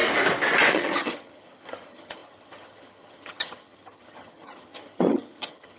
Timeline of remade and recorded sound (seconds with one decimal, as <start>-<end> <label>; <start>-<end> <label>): 0.0-0.7 recorded; 0.7-5.8 remade